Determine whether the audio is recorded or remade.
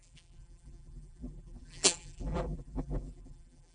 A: remade